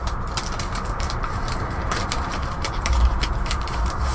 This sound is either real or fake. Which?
fake